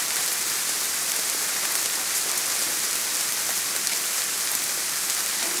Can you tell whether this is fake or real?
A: real